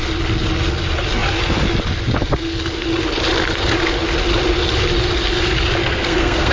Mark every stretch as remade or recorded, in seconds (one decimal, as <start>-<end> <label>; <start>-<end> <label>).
0.0-5.8 recorded; 5.8-6.5 remade